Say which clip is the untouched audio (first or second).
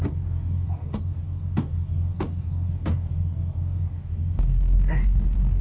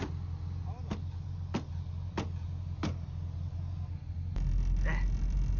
second